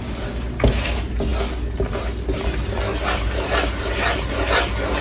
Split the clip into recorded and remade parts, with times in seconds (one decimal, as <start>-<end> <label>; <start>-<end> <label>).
0.0-5.0 recorded